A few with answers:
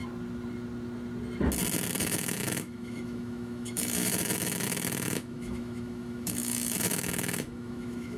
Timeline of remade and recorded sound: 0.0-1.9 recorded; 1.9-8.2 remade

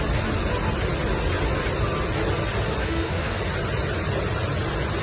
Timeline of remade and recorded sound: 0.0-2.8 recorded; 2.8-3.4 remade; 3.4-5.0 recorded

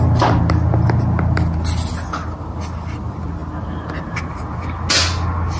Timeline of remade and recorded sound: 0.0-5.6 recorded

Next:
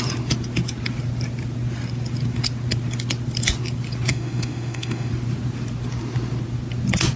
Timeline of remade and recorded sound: 0.0-4.1 recorded; 4.1-5.1 remade; 5.1-7.2 recorded

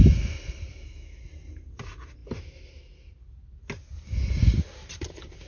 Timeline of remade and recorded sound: 0.0-0.7 recorded; 0.7-1.2 remade; 1.2-5.5 recorded